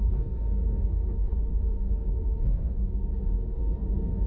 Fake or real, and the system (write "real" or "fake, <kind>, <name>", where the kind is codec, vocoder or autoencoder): fake, codec, SNAC